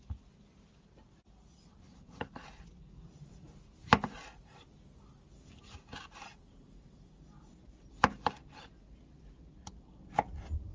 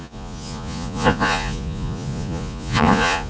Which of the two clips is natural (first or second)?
first